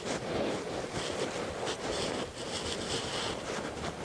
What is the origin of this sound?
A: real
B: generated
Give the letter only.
A